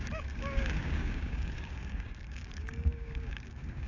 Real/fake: fake